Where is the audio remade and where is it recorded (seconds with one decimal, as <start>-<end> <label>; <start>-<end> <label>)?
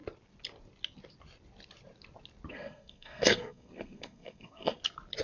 0.0-2.5 recorded; 2.5-4.8 remade; 4.8-5.2 recorded